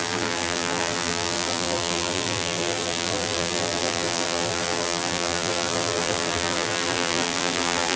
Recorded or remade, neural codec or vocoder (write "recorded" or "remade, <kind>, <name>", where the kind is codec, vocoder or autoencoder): remade, vocoder, BigVGAN v2